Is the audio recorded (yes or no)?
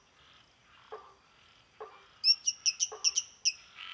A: yes